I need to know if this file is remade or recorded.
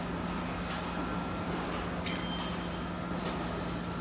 recorded